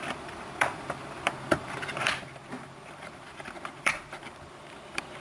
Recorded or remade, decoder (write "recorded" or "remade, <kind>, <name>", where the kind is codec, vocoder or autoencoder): remade, vocoder, BigVGAN v2